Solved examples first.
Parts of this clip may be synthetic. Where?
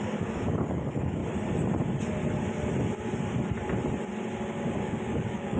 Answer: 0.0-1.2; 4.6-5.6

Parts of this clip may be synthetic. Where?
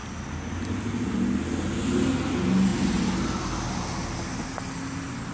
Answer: 2.7-3.4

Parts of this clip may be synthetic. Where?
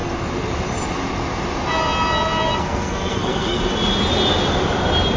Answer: 2.6-3.6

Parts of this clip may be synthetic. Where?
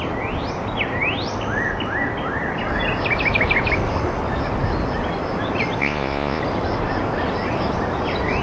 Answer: 5.8-6.4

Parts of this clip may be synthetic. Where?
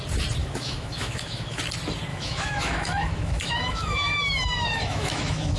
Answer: 0.4-1.6; 2.1-5.6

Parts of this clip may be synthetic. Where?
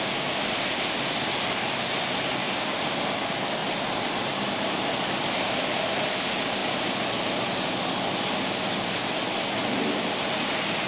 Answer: 3.6-6.1; 6.6-7.7